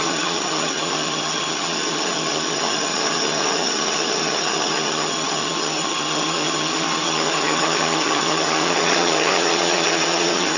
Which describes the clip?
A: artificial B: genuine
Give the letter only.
A